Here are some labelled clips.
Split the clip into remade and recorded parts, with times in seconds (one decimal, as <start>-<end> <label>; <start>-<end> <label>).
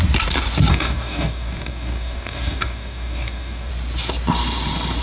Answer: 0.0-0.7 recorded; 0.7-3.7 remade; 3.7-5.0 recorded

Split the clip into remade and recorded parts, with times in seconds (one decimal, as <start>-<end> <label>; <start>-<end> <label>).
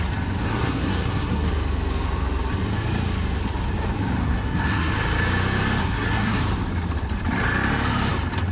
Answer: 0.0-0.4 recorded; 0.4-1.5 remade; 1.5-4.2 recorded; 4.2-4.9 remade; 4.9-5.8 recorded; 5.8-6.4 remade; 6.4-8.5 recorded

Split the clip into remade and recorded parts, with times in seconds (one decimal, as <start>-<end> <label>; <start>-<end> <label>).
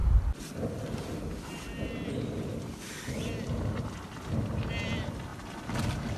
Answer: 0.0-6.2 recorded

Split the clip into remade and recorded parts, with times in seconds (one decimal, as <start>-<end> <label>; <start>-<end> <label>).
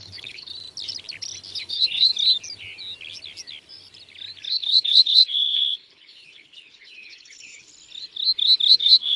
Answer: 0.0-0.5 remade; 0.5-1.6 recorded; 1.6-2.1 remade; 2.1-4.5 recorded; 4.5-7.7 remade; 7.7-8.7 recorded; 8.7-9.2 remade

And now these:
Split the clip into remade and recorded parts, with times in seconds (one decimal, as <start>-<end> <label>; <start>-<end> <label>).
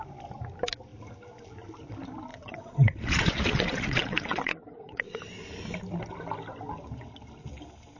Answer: 0.0-2.3 recorded; 2.3-5.2 remade; 5.2-8.0 recorded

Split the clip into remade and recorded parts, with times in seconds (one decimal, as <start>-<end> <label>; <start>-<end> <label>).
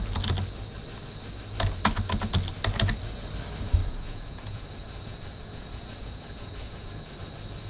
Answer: 0.0-3.8 recorded; 3.8-7.1 remade; 7.1-7.7 recorded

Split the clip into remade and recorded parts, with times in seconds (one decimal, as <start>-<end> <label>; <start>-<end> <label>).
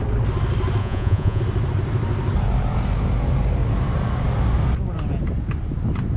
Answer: 0.0-0.8 recorded; 0.8-1.4 remade; 1.4-6.2 recorded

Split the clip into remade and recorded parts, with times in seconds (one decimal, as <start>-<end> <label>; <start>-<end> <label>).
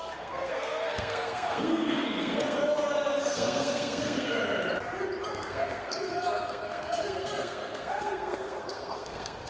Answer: 0.0-2.6 remade; 2.6-3.2 recorded; 3.2-4.4 remade; 4.4-5.3 recorded; 5.3-9.5 remade